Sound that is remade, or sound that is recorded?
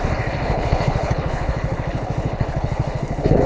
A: remade